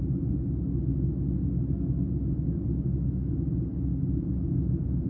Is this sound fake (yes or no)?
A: no